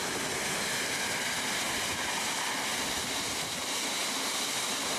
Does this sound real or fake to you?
real